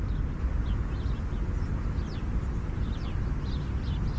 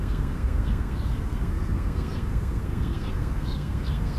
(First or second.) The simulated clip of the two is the second